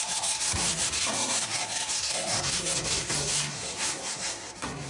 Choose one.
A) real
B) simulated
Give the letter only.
B